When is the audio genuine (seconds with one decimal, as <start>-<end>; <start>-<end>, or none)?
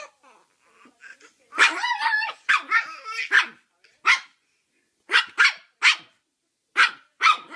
0.0-1.1; 2.5-4.3; 5.2-7.6